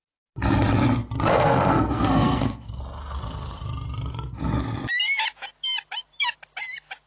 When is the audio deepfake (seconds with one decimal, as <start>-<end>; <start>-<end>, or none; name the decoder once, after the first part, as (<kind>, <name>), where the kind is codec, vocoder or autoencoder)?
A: 1.3-2.8 (codec, SNAC)